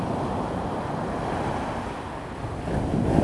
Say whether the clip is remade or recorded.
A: recorded